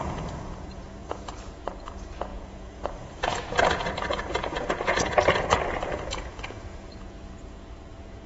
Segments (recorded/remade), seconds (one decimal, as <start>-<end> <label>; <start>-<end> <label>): 0.0-8.3 remade